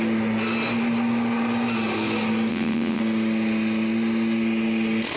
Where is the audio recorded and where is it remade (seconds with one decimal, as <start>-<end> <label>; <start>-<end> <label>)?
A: 0.0-2.5 recorded; 2.5-3.0 remade; 3.0-5.2 recorded